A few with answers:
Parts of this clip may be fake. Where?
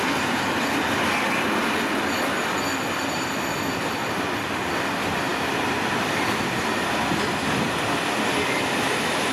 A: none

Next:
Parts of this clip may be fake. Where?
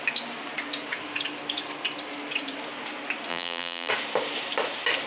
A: 3.3-3.9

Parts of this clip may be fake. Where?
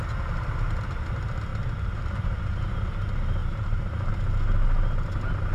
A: 1.5-2.6; 3.4-4.1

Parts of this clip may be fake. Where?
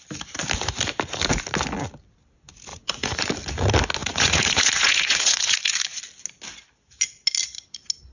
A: 2.7-3.3; 4.0-6.0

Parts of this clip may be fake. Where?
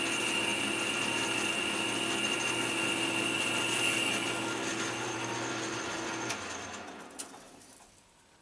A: none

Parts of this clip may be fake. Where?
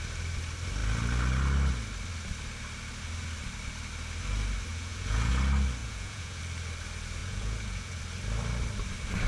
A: 4.7-5.3; 5.8-6.4; 7.2-8.0